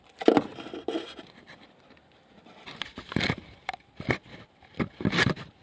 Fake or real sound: fake